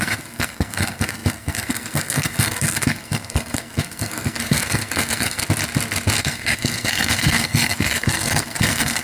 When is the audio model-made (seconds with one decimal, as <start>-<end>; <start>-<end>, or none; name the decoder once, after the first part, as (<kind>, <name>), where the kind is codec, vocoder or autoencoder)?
0.0-5.4 (codec, SNAC); 6.2-9.0